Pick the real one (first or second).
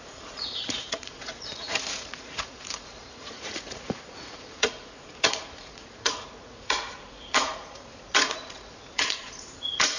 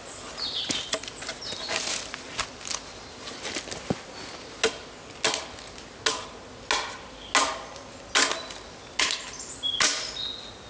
second